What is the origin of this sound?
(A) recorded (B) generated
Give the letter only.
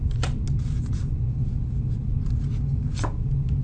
A